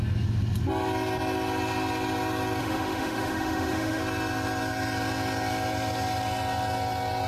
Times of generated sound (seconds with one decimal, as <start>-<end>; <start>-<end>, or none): 2.6-4.0